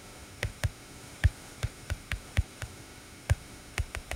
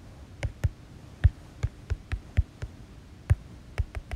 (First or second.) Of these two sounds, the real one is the second